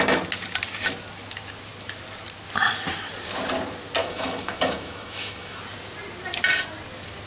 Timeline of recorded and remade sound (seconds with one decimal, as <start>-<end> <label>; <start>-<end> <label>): 0.0-4.0 recorded; 4.0-5.6 remade; 5.6-7.3 recorded